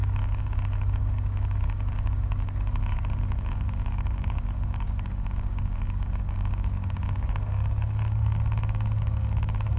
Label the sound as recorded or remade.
remade